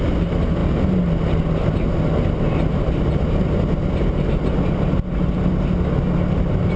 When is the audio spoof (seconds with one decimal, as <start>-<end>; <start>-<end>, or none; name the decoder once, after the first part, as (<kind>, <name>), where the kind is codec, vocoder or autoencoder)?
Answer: none